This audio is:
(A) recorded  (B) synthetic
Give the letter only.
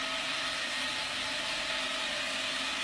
A